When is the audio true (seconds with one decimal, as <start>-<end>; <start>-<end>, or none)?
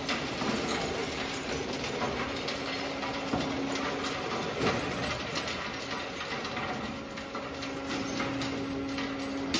0.0-1.0; 3.3-9.6